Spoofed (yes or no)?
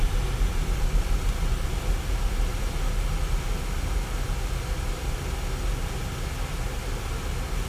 no